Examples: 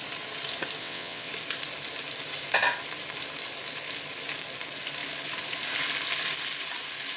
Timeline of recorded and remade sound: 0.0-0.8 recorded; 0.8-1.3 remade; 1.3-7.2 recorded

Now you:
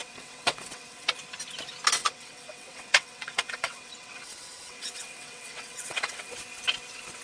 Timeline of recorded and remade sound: 0.0-1.1 remade; 1.1-2.0 recorded; 2.0-6.3 remade; 6.3-7.2 recorded

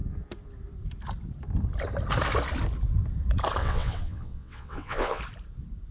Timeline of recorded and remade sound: 0.0-3.6 recorded; 3.6-5.2 remade; 5.2-5.9 recorded

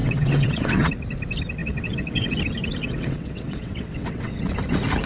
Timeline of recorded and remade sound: 0.0-0.9 remade; 0.9-1.6 recorded; 1.6-2.4 remade; 2.4-2.8 recorded; 2.8-4.5 remade; 4.5-5.1 recorded

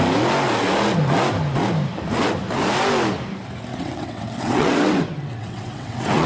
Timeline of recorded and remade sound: 0.0-3.7 recorded; 3.7-6.3 remade

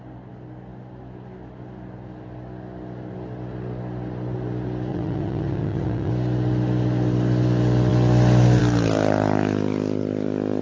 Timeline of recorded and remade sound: 0.0-4.9 recorded; 4.9-6.1 remade; 6.1-10.6 recorded

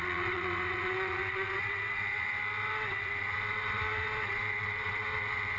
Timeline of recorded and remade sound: 0.0-5.6 remade

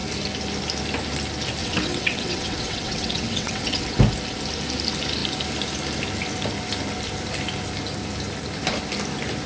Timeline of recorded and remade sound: 0.0-1.6 recorded; 1.6-4.0 remade; 4.0-9.5 recorded